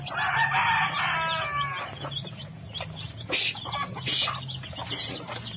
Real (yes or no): yes